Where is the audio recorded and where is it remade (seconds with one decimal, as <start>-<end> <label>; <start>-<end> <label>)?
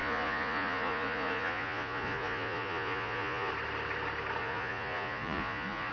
0.0-3.5 remade; 3.5-4.4 recorded; 4.4-5.9 remade